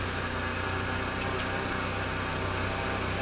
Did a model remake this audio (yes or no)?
no